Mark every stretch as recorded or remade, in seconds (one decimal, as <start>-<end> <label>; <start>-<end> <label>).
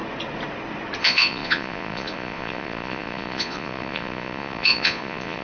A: 0.0-1.0 recorded; 1.0-5.4 remade